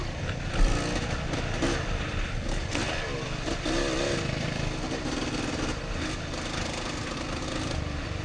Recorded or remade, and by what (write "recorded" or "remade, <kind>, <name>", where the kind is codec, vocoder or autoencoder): recorded